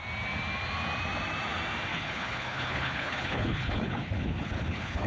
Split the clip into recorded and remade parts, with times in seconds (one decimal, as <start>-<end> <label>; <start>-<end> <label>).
0.0-1.9 recorded; 1.9-5.1 remade